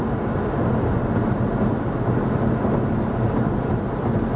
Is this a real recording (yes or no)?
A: yes